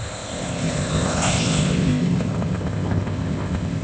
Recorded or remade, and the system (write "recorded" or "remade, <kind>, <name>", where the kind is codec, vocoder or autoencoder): remade, codec, ZipCodec